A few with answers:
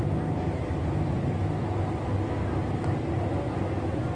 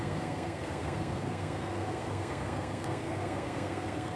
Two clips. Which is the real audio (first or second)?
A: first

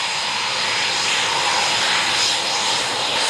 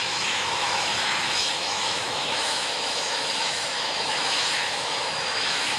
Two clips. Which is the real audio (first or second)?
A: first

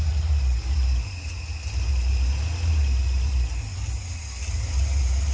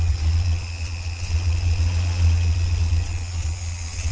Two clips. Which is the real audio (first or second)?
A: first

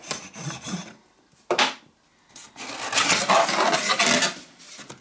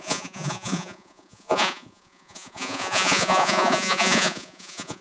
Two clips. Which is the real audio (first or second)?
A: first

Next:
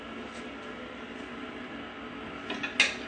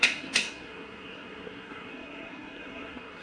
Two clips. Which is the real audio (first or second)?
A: first